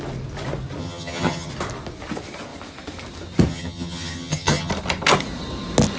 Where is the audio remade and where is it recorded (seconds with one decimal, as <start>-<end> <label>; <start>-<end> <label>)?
0.0-0.8 recorded; 0.8-1.5 remade; 1.5-3.5 recorded; 3.5-4.7 remade; 4.7-6.0 recorded